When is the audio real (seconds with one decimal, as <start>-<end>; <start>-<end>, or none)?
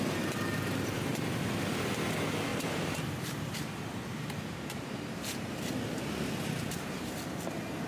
0.0-2.5; 7.1-7.9